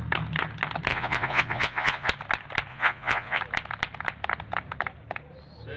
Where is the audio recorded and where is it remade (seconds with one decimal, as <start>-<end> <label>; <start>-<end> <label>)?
0.0-0.9 recorded; 0.9-2.1 remade; 2.1-2.7 recorded; 2.7-3.4 remade; 3.4-5.8 recorded

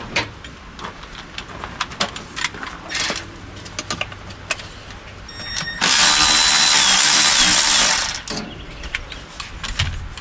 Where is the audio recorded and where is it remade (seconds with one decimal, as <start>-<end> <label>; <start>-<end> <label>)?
0.0-10.2 recorded

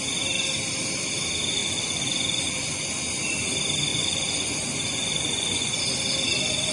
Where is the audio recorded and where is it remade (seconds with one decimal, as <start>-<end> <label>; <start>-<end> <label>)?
0.0-1.6 recorded; 1.6-2.9 remade; 2.9-3.9 recorded; 3.9-5.8 remade; 5.8-6.7 recorded